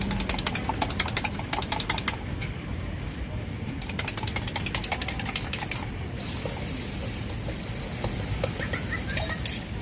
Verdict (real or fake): real